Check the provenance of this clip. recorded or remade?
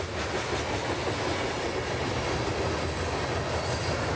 recorded